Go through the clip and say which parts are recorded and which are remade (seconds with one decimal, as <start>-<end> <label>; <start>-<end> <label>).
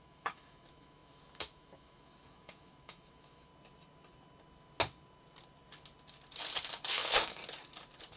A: 0.0-3.5 remade; 3.5-6.9 recorded; 6.9-7.4 remade; 7.4-8.2 recorded